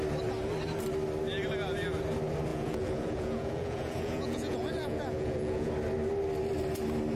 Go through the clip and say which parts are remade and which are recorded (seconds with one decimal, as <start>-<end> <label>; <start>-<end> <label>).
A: 0.0-2.5 recorded; 2.5-5.7 remade; 5.7-7.2 recorded